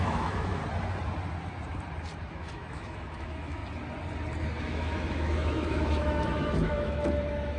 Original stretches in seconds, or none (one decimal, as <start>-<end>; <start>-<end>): 0.6-2.3; 3.6-4.6